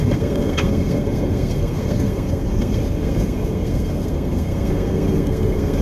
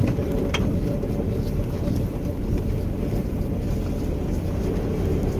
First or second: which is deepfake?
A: first